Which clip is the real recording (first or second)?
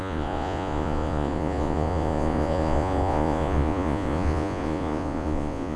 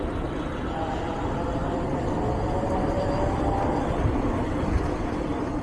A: second